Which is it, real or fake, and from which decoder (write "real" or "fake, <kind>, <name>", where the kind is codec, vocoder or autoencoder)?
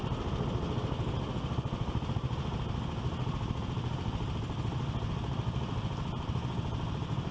real